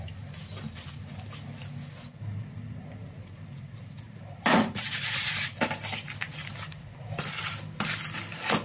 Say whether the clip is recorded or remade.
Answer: recorded